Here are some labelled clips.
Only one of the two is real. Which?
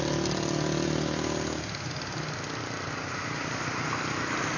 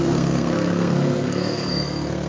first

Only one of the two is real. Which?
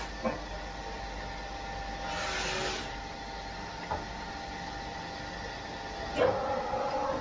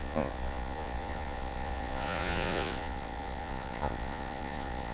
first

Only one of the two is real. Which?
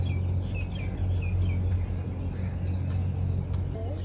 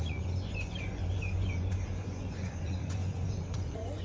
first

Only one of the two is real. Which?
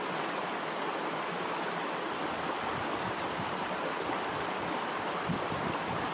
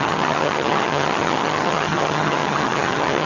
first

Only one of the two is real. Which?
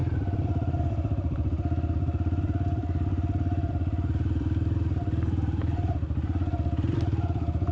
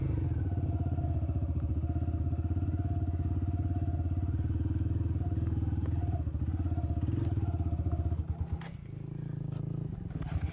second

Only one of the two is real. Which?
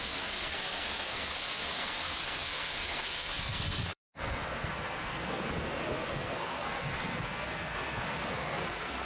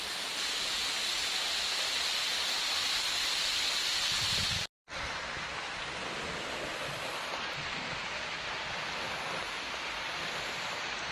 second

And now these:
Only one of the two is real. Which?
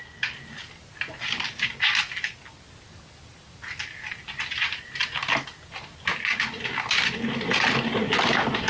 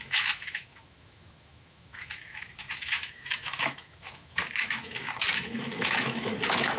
first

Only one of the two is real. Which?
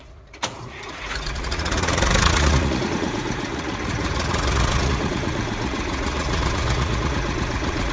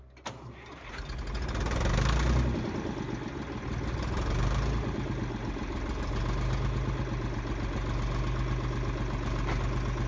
second